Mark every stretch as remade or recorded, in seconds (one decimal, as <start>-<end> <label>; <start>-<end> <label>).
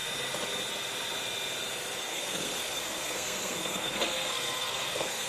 0.0-2.1 recorded; 2.1-5.3 remade